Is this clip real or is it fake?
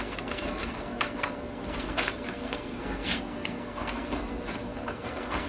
fake